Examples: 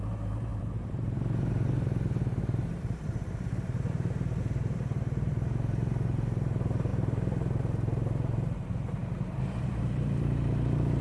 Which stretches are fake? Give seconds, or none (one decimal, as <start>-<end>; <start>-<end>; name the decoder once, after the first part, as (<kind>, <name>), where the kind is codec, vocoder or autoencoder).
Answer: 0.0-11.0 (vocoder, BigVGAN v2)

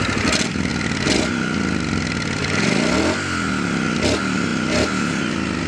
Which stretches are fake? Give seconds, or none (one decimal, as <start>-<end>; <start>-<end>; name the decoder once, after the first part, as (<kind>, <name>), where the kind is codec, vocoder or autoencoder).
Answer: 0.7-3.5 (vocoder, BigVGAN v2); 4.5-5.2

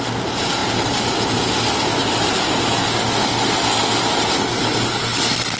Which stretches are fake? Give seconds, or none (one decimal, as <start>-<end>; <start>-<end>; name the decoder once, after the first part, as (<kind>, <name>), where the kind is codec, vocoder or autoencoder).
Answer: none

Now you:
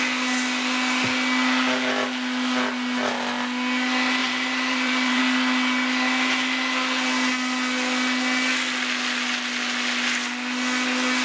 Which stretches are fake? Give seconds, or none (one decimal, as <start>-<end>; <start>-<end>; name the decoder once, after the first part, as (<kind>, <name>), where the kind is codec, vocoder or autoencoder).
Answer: 4.2-5.2 (vocoder, BigVGAN v2)

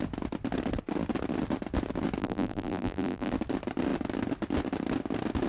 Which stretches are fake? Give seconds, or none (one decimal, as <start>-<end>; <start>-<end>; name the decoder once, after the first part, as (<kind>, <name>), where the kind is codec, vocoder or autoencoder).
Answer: 2.2-3.3 (vocoder, BigVGAN v2)

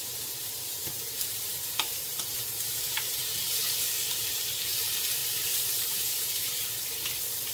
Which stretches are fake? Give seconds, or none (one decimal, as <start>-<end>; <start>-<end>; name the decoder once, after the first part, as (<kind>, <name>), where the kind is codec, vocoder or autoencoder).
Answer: 0.4-3.4 (vocoder, BigVGAN v2); 5.2-6.8

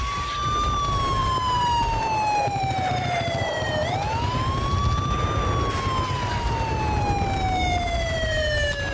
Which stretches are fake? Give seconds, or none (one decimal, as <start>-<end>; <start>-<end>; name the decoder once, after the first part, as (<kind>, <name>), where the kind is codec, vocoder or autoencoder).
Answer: 1.2-3.6 (vocoder, BigVGAN v2)